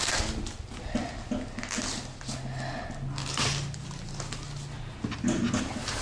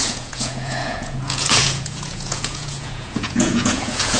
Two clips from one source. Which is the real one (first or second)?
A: first